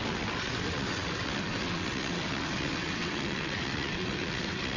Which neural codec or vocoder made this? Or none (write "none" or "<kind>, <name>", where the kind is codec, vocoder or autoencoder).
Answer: vocoder, WaveNeXt